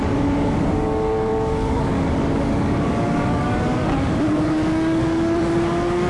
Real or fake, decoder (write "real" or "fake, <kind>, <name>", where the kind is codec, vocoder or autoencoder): fake, codec, DAC